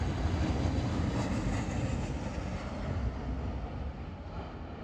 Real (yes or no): yes